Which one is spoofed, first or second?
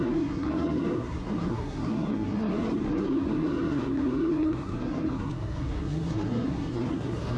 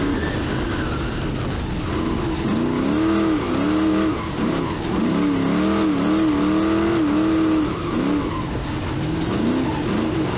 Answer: first